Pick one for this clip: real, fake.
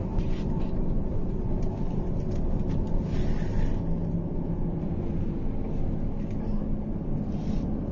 real